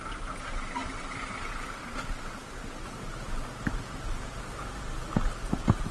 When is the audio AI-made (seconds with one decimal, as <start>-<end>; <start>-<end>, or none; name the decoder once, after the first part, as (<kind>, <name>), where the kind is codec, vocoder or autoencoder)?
none